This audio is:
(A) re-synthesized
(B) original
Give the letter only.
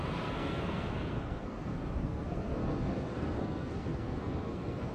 A